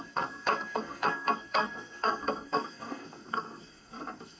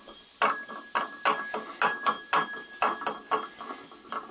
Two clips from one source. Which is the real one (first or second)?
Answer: second